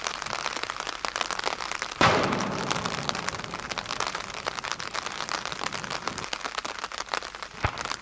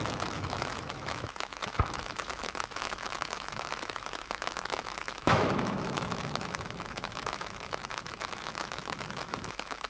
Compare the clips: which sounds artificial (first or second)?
second